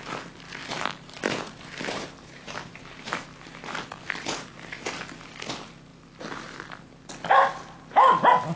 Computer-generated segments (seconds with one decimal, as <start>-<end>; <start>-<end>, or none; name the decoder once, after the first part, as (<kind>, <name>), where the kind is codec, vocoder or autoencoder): 0.6-4.0 (vocoder, BigVGAN v2)